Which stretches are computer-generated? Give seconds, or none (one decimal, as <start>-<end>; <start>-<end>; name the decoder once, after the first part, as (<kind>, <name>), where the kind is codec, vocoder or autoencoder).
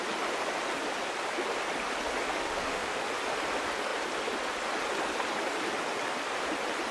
2.4-3.1 (autoencoder, DAC-VAE)